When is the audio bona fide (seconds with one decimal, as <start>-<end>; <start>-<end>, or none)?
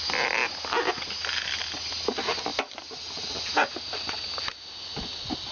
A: 0.0-5.5